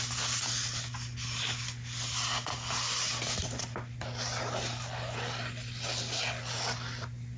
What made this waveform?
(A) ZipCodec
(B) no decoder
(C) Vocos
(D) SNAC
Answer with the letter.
B